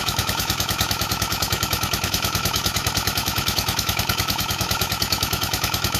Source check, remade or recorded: remade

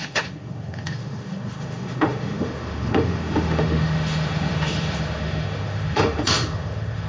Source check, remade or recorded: remade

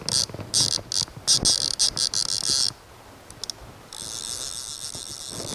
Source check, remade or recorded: recorded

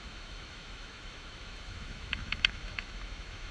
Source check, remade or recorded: remade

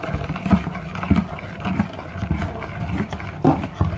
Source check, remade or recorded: recorded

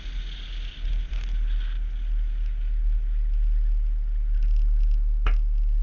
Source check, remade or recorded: recorded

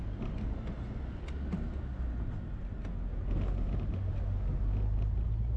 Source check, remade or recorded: recorded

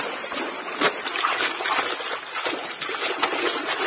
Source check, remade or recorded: recorded